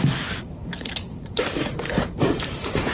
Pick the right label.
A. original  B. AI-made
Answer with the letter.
B